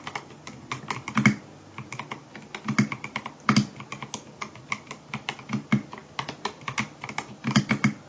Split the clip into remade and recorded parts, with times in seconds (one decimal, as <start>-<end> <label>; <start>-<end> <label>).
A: 0.0-6.0 recorded; 6.0-7.6 remade; 7.6-8.1 recorded